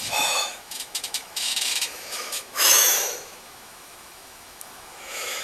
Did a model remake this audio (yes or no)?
yes